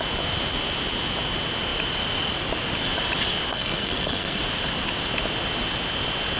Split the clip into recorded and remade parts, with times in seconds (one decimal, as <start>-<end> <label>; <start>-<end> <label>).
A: 0.0-3.5 recorded; 3.5-4.4 remade; 4.4-6.4 recorded